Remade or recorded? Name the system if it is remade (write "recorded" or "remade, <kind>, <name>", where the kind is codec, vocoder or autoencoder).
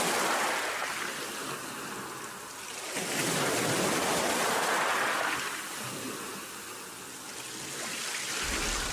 recorded